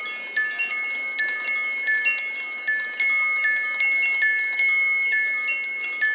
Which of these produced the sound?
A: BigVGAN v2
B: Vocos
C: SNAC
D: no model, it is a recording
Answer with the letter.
D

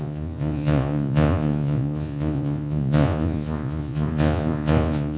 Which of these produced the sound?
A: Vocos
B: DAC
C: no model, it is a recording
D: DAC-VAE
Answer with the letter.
A